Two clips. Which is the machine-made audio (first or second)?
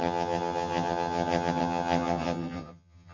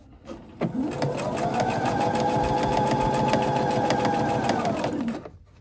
first